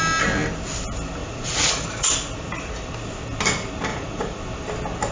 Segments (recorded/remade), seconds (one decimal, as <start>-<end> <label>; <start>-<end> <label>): 0.0-1.2 recorded; 1.2-2.1 remade; 2.1-3.9 recorded; 3.9-4.4 remade; 4.4-5.1 recorded